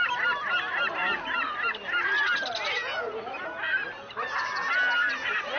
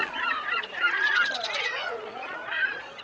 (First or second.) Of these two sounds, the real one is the first